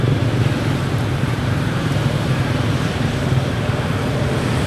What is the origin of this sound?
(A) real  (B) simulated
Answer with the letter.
B